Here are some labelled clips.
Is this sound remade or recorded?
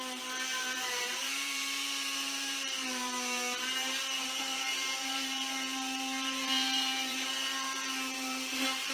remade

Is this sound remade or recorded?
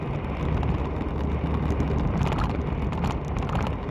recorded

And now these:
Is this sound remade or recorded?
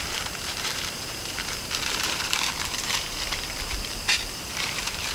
remade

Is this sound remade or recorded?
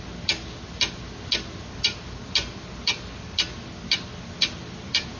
recorded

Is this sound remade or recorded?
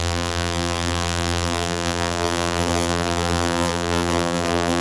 remade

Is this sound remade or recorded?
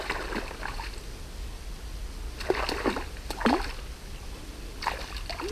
recorded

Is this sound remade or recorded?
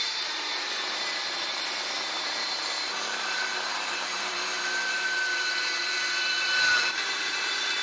remade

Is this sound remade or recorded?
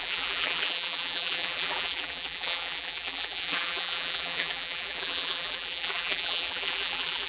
remade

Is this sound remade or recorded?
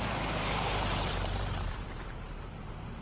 remade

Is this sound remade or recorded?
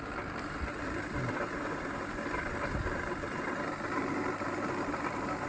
remade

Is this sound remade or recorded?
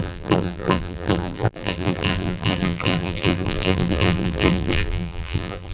remade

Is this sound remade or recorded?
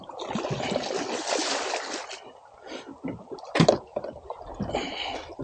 recorded